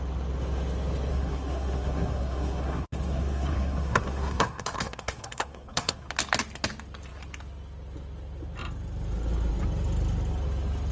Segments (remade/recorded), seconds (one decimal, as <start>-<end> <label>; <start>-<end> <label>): 0.0-1.1 recorded; 1.1-6.1 remade; 6.1-10.9 recorded